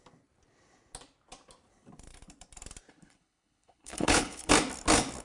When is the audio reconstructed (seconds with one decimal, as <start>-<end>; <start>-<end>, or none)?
2.9-4.5